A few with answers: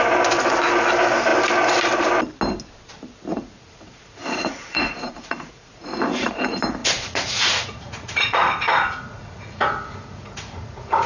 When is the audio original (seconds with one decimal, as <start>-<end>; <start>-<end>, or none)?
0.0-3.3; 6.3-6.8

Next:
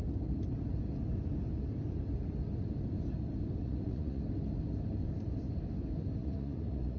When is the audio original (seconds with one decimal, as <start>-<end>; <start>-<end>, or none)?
0.0-3.6; 4.2-6.2

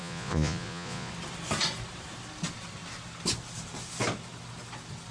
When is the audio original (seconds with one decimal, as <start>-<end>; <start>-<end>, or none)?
1.1-5.1

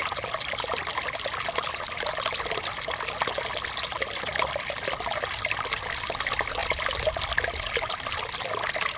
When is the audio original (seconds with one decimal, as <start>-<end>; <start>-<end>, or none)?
0.0-9.0

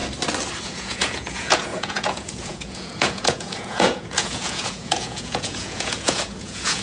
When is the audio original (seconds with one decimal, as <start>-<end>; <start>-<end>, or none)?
0.0-0.6

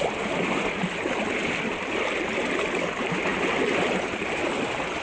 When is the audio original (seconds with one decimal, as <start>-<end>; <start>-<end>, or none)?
0.0-5.0